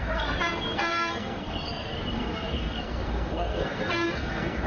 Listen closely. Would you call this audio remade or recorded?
remade